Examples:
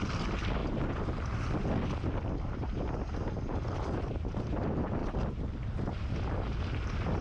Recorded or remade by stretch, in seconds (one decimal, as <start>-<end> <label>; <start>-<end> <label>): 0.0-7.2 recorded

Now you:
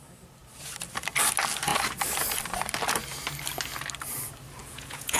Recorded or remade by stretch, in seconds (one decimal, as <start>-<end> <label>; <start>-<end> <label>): 0.0-4.6 recorded; 4.6-5.2 remade

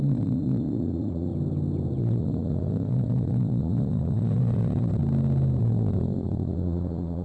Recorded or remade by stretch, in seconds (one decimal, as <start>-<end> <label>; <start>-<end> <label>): 0.0-1.3 remade; 1.3-2.0 recorded; 2.0-5.0 remade; 5.0-5.6 recorded; 5.6-7.2 remade

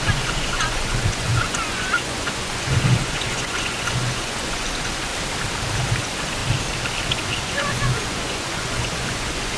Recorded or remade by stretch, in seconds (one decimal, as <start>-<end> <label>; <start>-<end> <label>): 0.0-5.1 remade; 5.1-6.0 recorded; 6.0-6.4 remade; 6.4-7.1 recorded; 7.1-9.6 remade

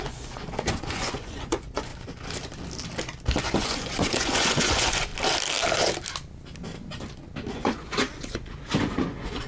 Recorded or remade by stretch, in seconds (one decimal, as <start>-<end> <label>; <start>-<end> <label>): 0.0-1.9 remade; 1.9-3.4 recorded; 3.4-5.1 remade; 5.1-7.5 recorded; 7.5-9.5 remade

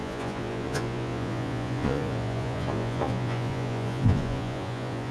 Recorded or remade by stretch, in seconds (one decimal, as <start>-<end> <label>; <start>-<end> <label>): 0.0-5.1 remade